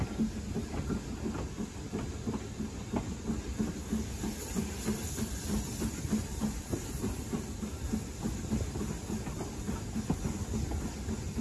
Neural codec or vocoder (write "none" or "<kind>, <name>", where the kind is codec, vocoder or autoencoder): none